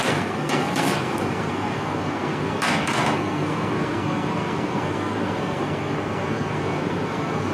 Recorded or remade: remade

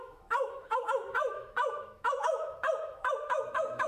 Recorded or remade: remade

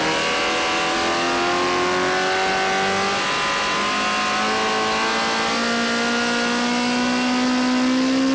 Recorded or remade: recorded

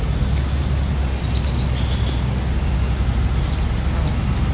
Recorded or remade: recorded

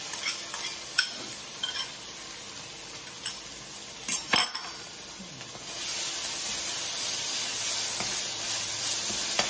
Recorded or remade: recorded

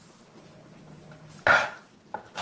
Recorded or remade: recorded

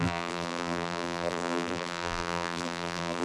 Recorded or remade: remade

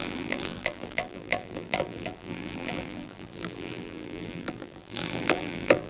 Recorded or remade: remade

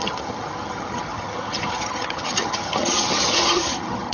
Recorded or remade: remade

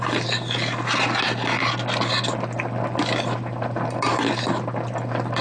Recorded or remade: recorded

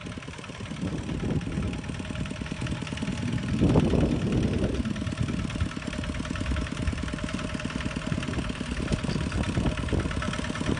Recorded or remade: recorded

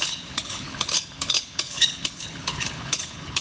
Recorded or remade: remade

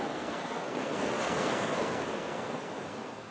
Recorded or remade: remade